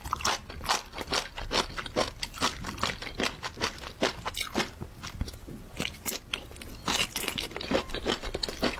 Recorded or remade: recorded